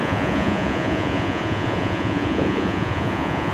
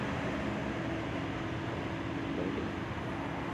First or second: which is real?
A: second